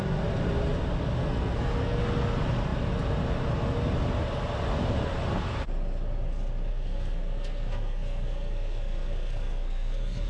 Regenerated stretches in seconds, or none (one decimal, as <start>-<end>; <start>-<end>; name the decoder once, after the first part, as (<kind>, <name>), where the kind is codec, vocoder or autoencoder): 1.2-2.0 (codec, SNAC); 6.7-10.3